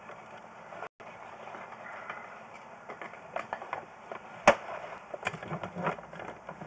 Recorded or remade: recorded